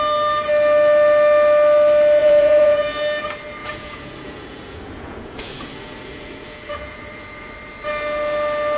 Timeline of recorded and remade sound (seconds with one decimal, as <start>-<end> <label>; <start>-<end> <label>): 0.0-2.2 recorded; 2.2-3.0 remade; 3.0-3.6 recorded; 3.6-7.5 remade; 7.5-8.8 recorded